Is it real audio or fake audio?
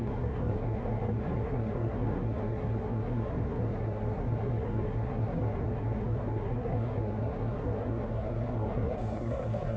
fake